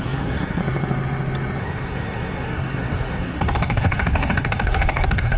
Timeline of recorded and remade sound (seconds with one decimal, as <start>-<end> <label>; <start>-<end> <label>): 0.0-0.6 remade; 0.6-1.6 recorded; 1.6-5.4 remade